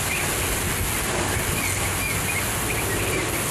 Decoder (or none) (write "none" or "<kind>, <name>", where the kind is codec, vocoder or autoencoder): none